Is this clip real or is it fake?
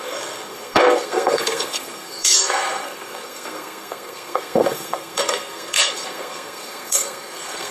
fake